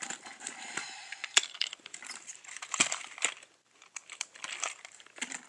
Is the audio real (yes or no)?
no